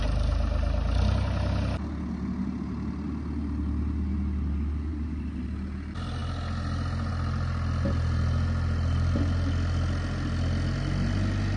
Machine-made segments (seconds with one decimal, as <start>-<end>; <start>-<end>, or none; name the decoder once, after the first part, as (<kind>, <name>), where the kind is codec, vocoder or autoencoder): none